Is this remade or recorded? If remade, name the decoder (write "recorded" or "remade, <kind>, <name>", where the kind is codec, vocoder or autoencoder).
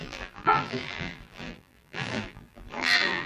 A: remade, vocoder, BigVGAN v2